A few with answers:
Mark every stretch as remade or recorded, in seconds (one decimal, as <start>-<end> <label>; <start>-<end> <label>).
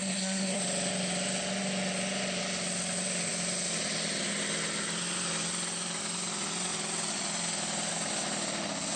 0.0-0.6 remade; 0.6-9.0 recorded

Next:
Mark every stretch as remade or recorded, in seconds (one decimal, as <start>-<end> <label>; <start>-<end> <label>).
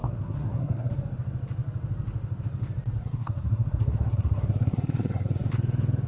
0.0-0.9 remade; 0.9-3.0 recorded; 3.0-5.5 remade; 5.5-6.1 recorded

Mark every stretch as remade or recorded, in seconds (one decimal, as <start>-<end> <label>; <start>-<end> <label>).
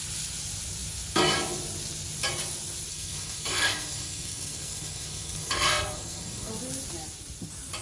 0.0-2.9 recorded; 2.9-6.5 remade; 6.5-7.8 recorded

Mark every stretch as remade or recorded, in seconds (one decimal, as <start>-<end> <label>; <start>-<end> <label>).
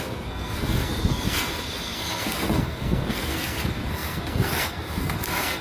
0.0-5.6 remade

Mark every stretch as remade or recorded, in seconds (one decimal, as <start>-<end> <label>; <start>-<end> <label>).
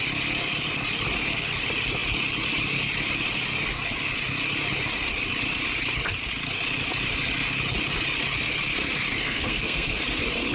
0.0-9.1 recorded; 9.1-10.0 remade; 10.0-10.5 recorded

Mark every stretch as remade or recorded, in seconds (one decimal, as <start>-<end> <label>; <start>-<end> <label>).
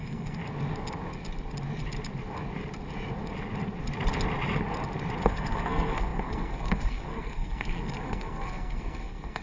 0.0-0.4 remade; 0.4-5.2 recorded; 5.2-9.4 remade